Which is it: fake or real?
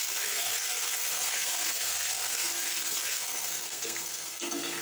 fake